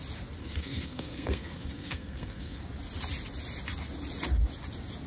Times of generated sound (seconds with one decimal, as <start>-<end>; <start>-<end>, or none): 0.4-2.6